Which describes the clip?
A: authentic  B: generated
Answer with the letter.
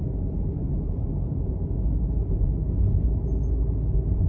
A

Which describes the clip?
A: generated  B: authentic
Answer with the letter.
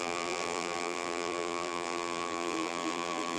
A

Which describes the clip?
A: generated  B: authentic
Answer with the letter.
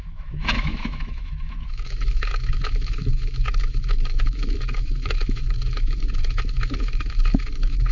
A